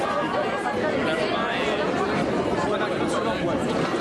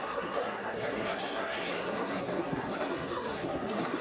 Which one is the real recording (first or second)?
first